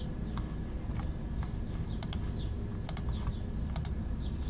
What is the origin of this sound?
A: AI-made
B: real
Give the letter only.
B